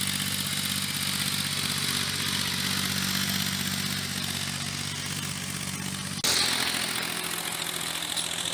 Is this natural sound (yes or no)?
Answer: yes